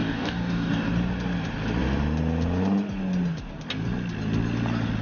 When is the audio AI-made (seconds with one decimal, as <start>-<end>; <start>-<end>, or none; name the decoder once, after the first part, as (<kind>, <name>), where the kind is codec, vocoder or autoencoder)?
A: 0.0-0.9 (codec, DAC)